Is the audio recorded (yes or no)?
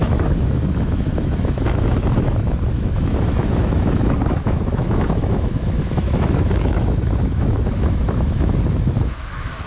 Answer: no